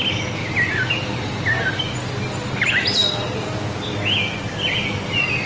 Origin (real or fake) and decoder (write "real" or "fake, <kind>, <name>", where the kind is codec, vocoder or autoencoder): real